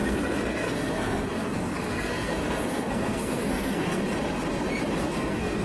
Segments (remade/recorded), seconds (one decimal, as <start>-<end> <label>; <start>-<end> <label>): 0.0-4.0 remade; 4.0-5.0 recorded; 5.0-5.6 remade